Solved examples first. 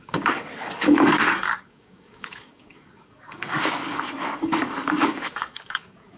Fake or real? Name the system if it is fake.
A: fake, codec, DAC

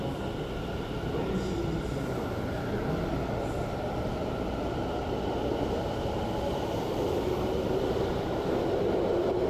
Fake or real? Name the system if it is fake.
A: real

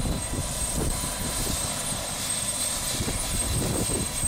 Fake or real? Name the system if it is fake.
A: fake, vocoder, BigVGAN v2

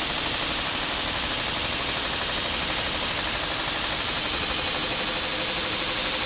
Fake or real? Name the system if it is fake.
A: real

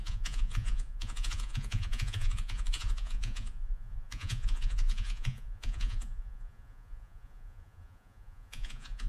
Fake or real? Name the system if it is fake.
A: fake, vocoder, Vocos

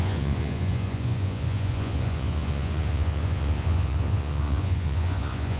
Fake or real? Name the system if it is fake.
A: fake, vocoder, Vocos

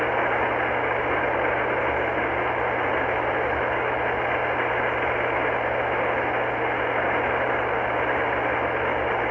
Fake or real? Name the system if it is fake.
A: real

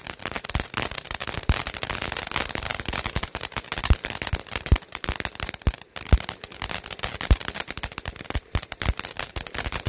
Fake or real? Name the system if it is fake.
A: fake, vocoder, BigVGAN v2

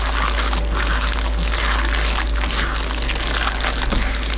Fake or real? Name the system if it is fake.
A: real